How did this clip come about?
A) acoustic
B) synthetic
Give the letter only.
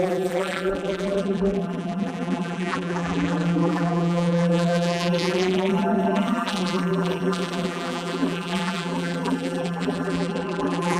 B